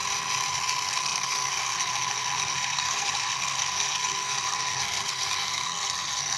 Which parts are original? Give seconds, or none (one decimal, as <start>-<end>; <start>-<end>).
0.0-0.5